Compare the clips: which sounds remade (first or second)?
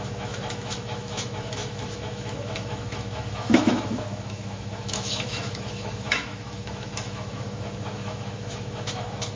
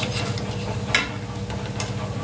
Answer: first